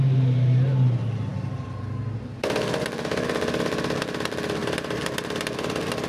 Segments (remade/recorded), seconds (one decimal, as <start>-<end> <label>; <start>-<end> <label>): 0.0-6.1 recorded